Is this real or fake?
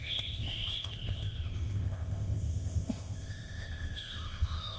fake